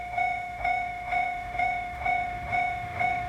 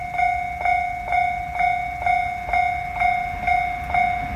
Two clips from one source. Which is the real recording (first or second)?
second